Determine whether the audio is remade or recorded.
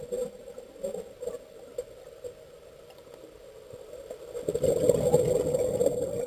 recorded